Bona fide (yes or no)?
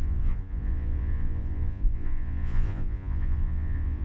no